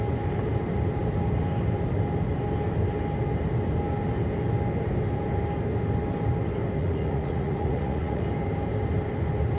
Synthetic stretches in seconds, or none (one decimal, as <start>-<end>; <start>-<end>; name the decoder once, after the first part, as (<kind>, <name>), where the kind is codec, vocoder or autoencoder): 6.8-8.2 (vocoder, Vocos)